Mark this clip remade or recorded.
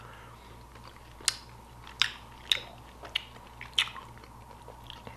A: recorded